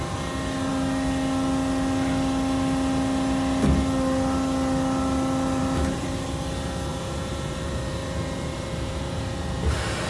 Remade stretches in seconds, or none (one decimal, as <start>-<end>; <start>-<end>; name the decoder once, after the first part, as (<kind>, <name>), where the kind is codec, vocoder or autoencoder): 6.9-9.6 (vocoder, BigVGAN v2)